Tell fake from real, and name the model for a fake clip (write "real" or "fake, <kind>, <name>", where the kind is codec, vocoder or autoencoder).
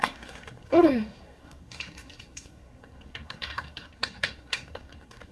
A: fake, codec, SNAC